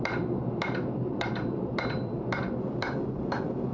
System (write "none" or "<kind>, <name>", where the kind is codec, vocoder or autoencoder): vocoder, BigVGAN v2